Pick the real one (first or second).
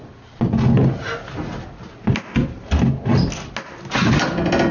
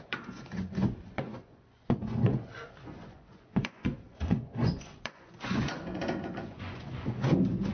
first